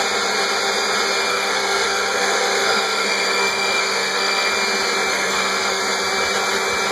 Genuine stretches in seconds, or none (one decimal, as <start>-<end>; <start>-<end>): 0.0-1.3; 4.5-5.1; 5.8-6.9